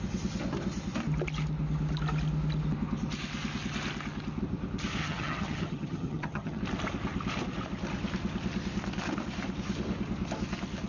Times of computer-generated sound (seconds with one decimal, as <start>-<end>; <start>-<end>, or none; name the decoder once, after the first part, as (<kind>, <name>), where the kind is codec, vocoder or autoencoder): 5.0-6.6 (vocoder, HiFi-GAN)